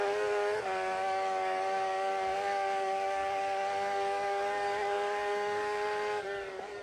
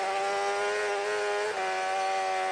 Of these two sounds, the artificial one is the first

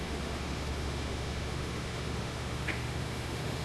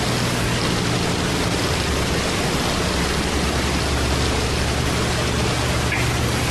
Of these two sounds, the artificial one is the first